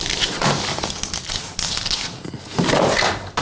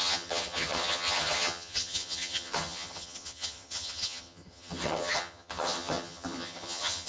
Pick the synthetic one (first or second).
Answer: second